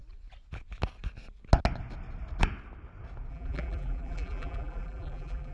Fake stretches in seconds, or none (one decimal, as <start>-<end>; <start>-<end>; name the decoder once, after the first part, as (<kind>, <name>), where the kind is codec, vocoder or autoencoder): 3.3-5.5 (vocoder, BigVGAN v2)